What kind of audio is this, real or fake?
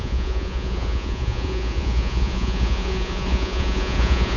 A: fake